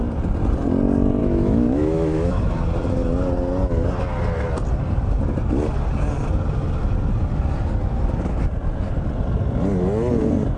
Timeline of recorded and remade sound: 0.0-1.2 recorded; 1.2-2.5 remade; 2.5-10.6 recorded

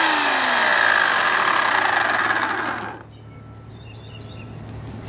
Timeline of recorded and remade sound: 0.0-5.1 recorded

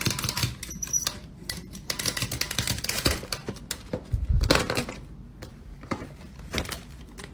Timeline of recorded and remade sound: 0.0-0.4 recorded; 0.4-4.8 remade; 4.8-5.5 recorded; 5.5-6.2 remade; 6.2-7.3 recorded

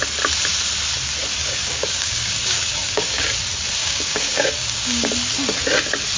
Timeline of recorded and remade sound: 0.0-1.4 recorded; 1.4-3.3 remade; 3.3-3.8 recorded; 3.8-5.1 remade; 5.1-6.2 recorded